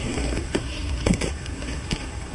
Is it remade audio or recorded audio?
remade